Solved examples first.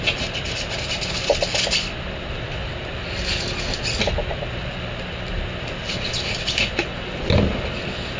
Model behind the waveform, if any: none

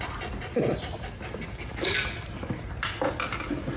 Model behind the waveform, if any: none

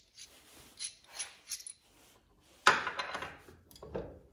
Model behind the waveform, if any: none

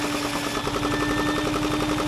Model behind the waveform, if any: none